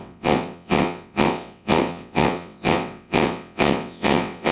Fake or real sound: fake